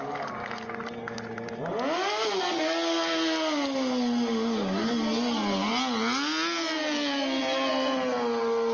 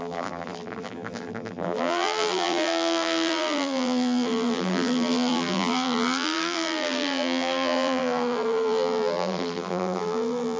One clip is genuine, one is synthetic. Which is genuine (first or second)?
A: first